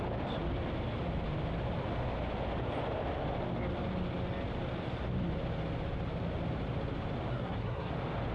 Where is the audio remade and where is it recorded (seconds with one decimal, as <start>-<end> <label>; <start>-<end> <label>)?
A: 0.0-7.3 recorded; 7.3-7.9 remade; 7.9-8.3 recorded